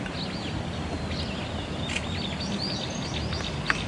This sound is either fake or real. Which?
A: real